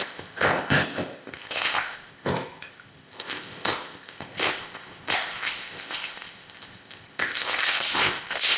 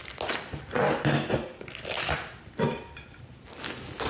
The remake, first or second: first